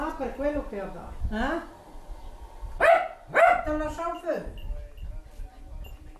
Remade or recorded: recorded